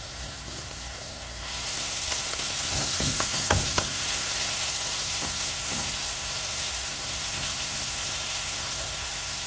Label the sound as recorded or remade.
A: remade